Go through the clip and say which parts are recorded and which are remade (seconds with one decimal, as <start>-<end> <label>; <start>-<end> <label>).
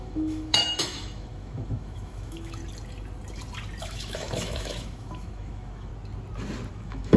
0.0-2.6 remade; 2.6-3.8 recorded; 3.8-5.9 remade; 5.9-6.7 recorded; 6.7-7.2 remade